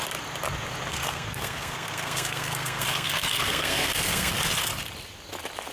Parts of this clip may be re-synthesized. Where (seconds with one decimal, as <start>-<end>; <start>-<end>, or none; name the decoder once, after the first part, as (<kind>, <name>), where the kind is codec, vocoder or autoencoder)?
0.9-4.3 (codec, SNAC)